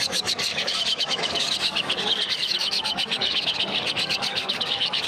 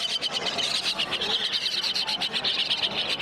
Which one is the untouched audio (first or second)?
second